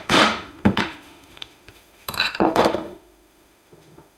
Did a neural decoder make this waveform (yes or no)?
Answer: yes